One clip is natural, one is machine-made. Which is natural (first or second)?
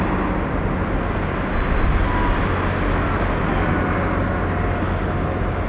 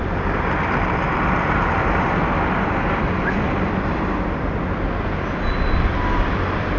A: first